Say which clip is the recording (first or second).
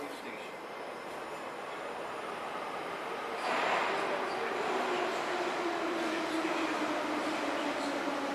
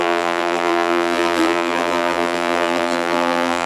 first